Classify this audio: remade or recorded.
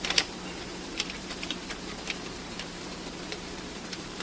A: remade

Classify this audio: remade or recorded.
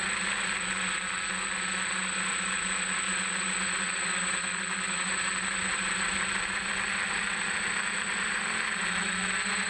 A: recorded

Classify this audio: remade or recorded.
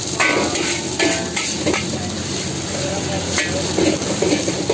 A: recorded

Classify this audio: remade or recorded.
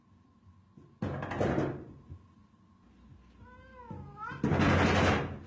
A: recorded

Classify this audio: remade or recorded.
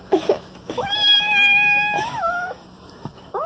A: remade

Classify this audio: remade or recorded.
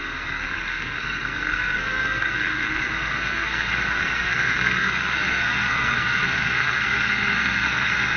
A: remade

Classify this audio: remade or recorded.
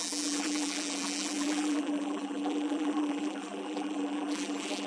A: remade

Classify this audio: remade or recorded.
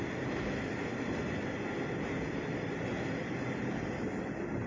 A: recorded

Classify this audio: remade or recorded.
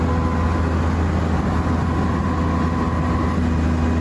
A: recorded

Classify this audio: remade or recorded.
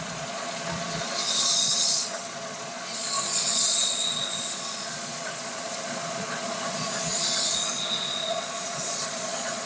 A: remade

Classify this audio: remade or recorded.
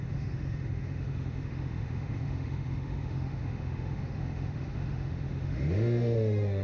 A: remade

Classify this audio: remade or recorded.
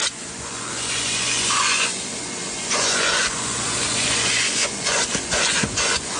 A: remade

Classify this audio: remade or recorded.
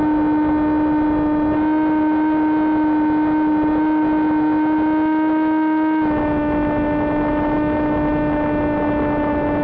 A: recorded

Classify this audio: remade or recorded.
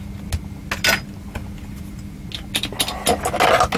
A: recorded